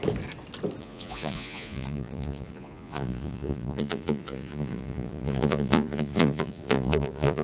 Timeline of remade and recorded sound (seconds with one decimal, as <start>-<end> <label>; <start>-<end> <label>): 0.0-0.8 recorded; 0.8-7.4 remade